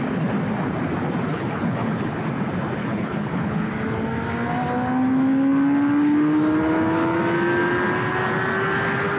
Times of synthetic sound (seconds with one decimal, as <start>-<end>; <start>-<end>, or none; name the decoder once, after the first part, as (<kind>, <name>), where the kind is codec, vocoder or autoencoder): 1.3-2.2 (codec, HILCodec); 2.8-3.7